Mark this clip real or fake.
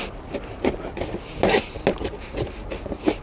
real